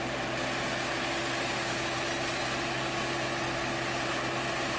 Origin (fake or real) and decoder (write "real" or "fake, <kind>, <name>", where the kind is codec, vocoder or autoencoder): real